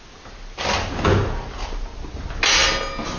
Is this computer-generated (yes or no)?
no